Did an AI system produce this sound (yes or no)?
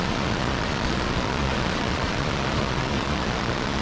yes